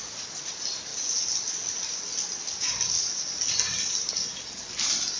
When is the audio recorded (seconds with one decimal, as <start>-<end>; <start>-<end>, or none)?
0.0-5.2